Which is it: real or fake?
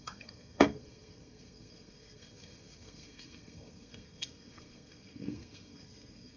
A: fake